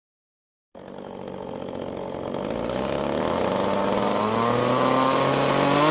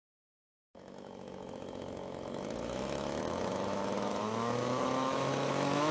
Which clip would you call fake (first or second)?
second